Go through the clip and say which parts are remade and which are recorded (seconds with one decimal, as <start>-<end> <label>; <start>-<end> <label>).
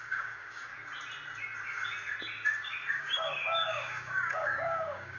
0.0-0.7 remade; 0.7-2.9 recorded; 2.9-5.2 remade